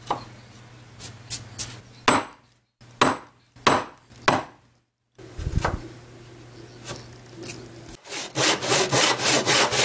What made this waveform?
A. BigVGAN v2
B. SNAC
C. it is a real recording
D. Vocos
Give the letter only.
C